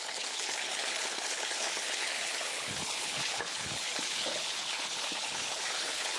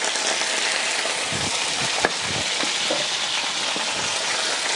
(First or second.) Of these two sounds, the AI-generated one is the first